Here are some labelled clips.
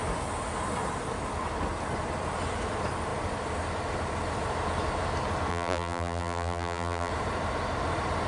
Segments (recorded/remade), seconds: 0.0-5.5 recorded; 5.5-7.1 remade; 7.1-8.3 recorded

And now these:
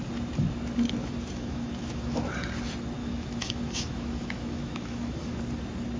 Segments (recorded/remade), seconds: 0.0-1.0 recorded; 1.0-2.2 remade; 2.2-3.0 recorded; 3.0-5.4 remade; 5.4-6.0 recorded

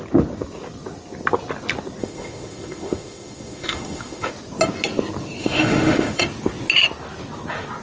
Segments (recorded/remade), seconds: 0.0-2.0 recorded; 2.0-4.3 remade; 4.3-5.4 recorded; 5.4-6.2 remade; 6.2-7.8 recorded